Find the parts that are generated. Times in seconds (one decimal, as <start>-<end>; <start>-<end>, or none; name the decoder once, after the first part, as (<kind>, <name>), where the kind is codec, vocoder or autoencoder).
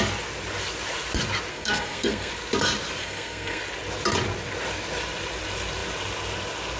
1.5-2.3 (codec, SNAC); 3.0-3.6